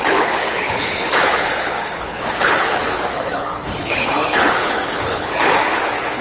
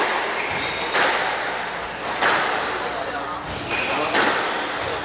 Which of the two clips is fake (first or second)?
first